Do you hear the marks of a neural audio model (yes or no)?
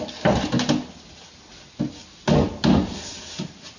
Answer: no